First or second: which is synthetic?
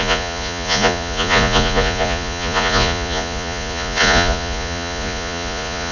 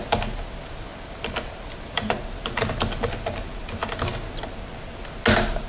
first